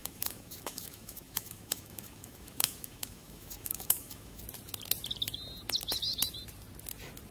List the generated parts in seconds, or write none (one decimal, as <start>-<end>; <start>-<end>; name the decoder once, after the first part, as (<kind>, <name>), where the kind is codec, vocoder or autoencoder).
0.0-4.4 (autoencoder, DAC-VAE)